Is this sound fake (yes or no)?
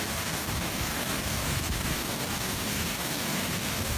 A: yes